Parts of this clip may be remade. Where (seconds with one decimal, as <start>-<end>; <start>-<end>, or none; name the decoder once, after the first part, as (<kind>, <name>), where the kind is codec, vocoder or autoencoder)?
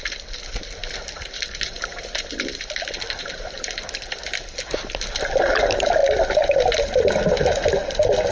none